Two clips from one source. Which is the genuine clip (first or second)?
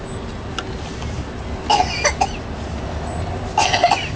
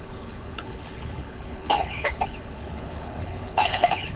first